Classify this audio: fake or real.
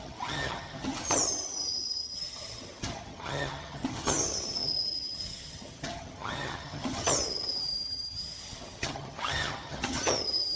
fake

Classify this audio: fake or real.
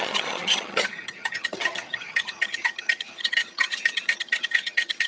fake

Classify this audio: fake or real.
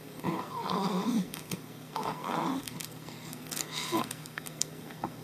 fake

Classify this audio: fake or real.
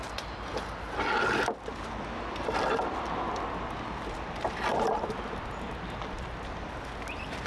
real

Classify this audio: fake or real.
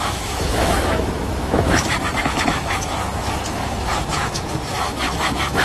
fake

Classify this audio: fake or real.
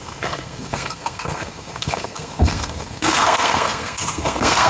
fake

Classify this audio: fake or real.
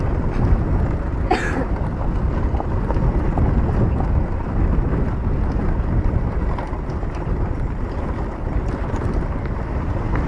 real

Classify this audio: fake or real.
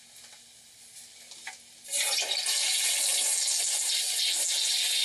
real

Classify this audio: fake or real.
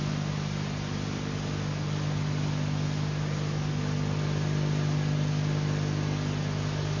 real